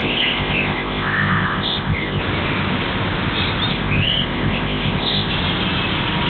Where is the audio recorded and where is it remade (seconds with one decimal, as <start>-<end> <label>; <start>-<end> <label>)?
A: 0.0-2.2 remade; 2.2-3.7 recorded; 3.7-5.3 remade; 5.3-6.3 recorded